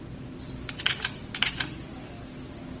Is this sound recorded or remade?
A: recorded